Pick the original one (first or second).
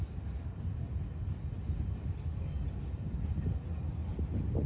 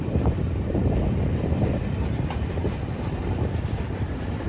first